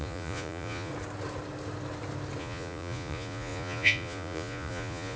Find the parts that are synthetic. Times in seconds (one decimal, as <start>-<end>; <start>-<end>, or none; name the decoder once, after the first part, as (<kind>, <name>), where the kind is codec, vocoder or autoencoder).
0.0-0.9 (vocoder, Vocos); 2.4-5.2